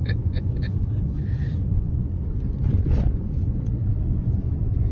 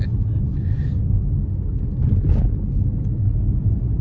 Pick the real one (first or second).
second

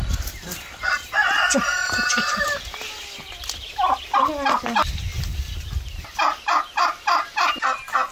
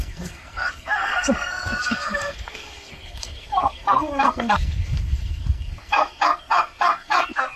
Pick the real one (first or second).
first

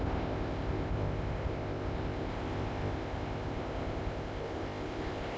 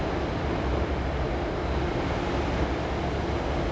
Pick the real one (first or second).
second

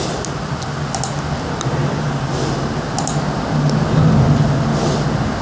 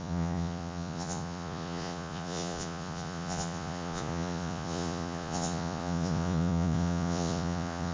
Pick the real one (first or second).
first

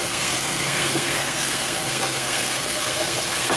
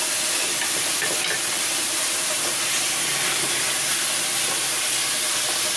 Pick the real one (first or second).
second